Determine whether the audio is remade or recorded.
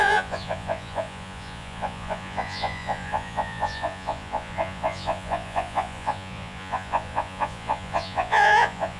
remade